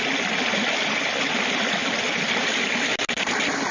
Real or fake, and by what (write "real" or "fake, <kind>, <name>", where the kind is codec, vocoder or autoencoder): real